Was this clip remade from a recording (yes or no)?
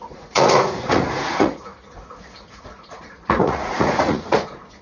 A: yes